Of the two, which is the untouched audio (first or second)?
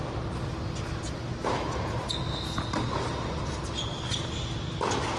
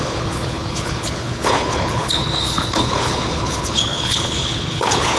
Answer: first